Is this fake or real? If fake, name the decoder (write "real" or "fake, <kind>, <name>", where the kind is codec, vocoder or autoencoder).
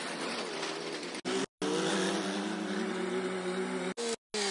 real